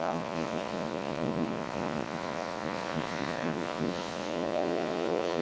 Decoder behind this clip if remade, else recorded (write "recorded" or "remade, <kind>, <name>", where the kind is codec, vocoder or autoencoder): remade, vocoder, Vocos